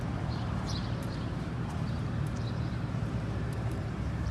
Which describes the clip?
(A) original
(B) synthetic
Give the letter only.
B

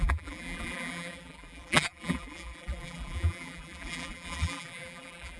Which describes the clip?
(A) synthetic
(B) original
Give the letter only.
A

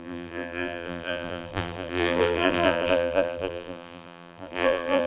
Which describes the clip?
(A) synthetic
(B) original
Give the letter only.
A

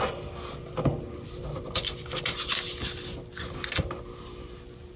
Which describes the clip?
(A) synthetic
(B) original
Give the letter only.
B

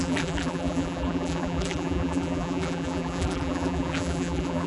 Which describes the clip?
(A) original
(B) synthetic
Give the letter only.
B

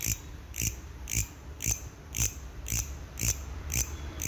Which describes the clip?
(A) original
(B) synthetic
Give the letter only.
B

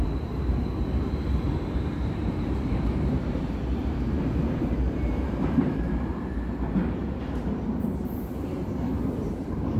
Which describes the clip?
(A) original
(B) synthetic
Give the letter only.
B